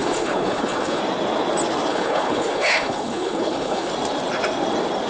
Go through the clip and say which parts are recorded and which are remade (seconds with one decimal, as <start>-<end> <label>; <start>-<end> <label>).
0.0-1.0 remade; 1.0-1.9 recorded; 1.9-3.9 remade; 3.9-5.1 recorded